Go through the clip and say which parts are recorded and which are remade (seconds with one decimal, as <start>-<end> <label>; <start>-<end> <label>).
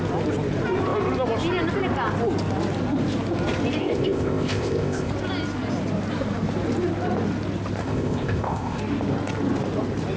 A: 0.0-3.8 recorded; 3.8-5.1 remade; 5.1-7.8 recorded; 7.8-8.8 remade; 8.8-10.2 recorded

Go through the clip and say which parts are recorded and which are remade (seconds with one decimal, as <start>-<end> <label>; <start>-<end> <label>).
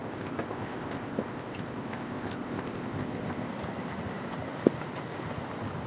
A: 0.0-3.5 remade; 3.5-5.9 recorded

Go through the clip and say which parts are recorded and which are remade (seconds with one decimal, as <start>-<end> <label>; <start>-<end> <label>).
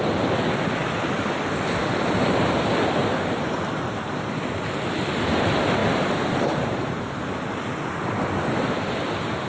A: 0.0-9.5 recorded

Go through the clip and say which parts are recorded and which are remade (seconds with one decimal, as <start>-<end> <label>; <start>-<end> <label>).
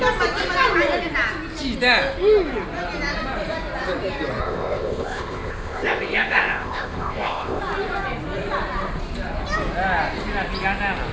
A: 0.0-4.4 recorded; 4.4-7.6 remade; 7.6-11.1 recorded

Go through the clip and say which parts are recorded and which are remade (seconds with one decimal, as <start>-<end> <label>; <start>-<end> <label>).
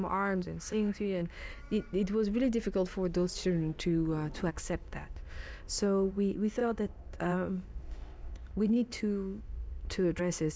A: 0.0-1.5 remade; 1.5-4.5 recorded; 4.5-10.6 remade